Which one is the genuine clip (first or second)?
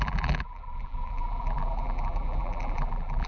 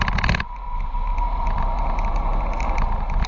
second